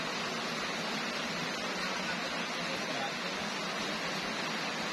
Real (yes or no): yes